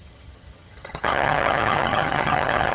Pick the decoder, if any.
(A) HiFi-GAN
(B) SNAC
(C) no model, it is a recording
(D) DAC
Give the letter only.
A